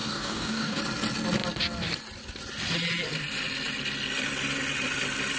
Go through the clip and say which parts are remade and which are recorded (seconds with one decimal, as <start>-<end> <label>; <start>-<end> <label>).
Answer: 0.0-0.8 remade; 0.8-5.4 recorded